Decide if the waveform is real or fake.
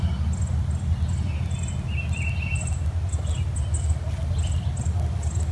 real